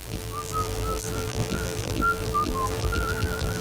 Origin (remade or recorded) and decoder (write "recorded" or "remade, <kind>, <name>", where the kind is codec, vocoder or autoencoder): remade, vocoder, BigVGAN v2